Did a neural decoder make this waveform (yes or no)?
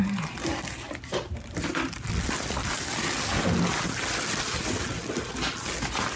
no